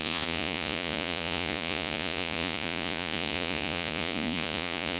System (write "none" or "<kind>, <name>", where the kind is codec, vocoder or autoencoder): vocoder, Vocos